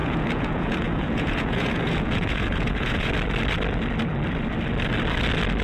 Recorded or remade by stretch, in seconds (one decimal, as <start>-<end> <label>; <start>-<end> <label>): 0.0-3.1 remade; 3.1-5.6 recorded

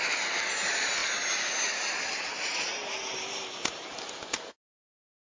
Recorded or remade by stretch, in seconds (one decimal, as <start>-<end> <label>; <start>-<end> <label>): 0.0-5.2 recorded

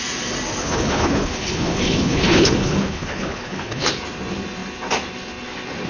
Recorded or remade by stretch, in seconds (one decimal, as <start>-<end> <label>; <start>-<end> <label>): 0.0-0.6 recorded; 0.6-3.9 remade; 3.9-5.9 recorded